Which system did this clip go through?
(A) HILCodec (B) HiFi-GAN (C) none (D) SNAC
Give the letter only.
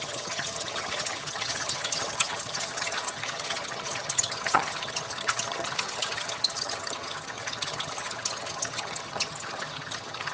B